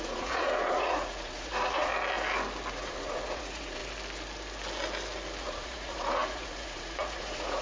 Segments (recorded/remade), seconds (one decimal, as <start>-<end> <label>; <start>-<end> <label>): 0.0-1.9 remade; 1.9-2.7 recorded; 2.7-3.8 remade; 3.8-5.4 recorded; 5.4-7.6 remade